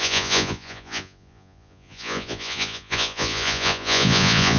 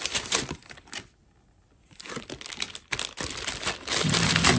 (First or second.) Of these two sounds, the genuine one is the second